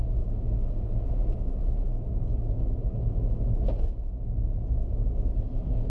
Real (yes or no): yes